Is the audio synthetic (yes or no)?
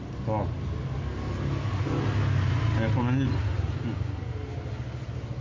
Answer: no